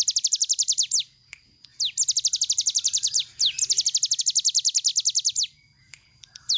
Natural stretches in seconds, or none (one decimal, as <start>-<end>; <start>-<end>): 0.0-6.6